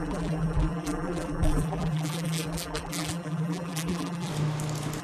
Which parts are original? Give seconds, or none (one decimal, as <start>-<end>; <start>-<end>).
4.3-5.0